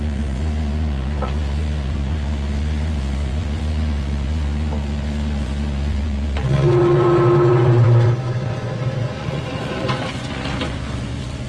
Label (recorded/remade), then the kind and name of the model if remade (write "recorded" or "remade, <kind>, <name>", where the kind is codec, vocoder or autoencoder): remade, vocoder, Vocos